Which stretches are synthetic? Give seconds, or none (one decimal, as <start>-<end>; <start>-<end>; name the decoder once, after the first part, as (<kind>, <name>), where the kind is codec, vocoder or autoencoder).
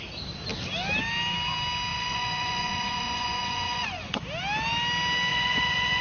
1.9-4.2 (vocoder, Vocos); 5.3-6.0